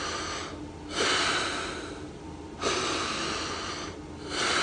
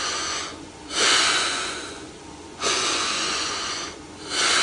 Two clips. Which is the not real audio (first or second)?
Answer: second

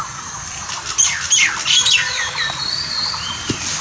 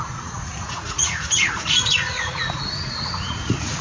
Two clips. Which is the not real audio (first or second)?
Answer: second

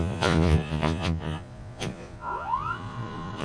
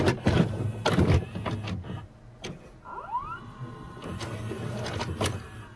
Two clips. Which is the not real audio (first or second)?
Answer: first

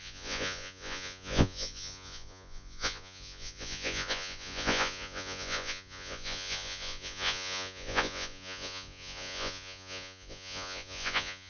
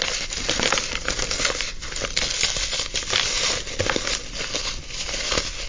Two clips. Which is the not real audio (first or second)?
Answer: first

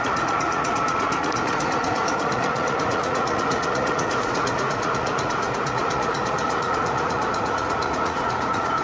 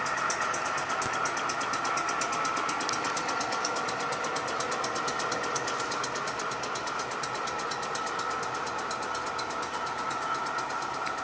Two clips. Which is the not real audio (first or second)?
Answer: first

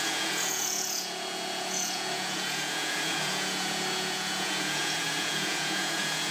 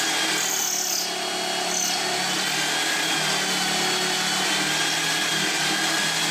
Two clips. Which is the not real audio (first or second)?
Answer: first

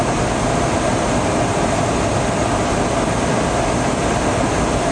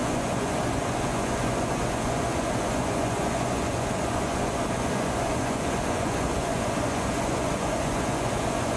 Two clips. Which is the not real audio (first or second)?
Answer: second